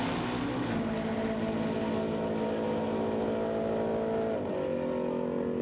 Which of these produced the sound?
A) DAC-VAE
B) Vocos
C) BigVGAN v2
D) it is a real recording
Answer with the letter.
D